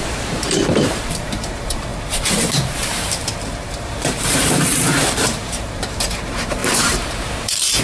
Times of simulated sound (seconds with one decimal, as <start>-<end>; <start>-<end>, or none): 0.0-7.8